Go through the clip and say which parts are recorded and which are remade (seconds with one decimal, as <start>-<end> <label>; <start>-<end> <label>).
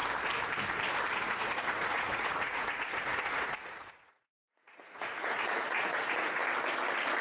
0.0-1.2 recorded; 1.2-6.4 remade; 6.4-7.2 recorded